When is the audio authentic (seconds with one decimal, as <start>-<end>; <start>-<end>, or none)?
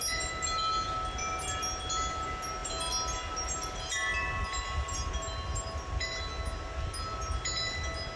0.0-8.2